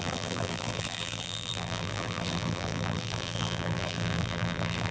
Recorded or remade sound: remade